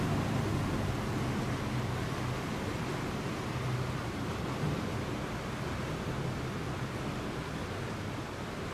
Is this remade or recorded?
recorded